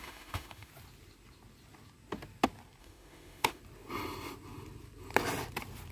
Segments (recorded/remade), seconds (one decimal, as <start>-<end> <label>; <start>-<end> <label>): 0.0-0.7 remade; 0.7-2.8 recorded; 2.8-3.6 remade; 3.6-5.9 recorded